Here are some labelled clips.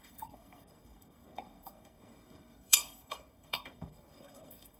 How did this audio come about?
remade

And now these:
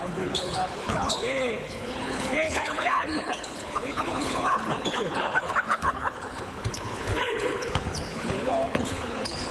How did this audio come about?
remade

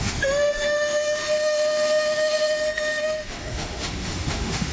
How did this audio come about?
remade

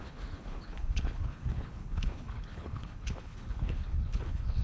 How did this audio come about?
remade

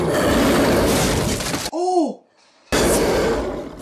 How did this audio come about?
recorded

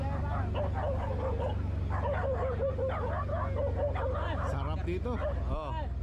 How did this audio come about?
recorded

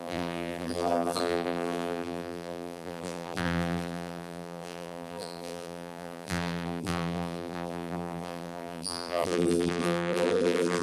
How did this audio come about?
remade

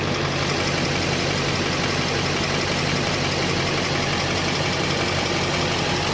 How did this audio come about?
recorded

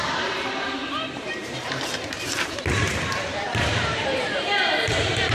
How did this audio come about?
remade